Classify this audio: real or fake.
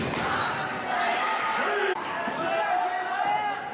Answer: real